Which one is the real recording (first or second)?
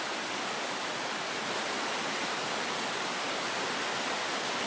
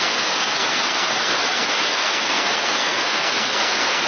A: first